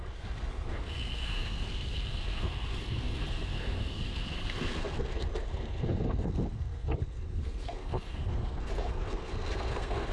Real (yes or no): no